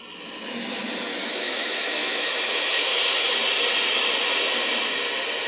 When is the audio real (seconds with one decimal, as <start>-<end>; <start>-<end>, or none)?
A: 0.0-1.2; 3.0-5.5